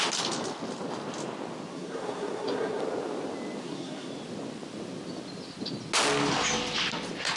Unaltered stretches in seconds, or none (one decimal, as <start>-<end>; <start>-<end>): 0.0-1.7; 2.8-3.6; 4.1-7.4